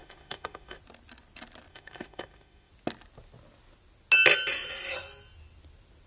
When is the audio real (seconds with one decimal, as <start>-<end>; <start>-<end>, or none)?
0.8-1.7; 2.7-6.1

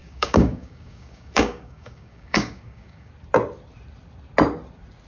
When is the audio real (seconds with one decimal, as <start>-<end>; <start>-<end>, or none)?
3.1-5.1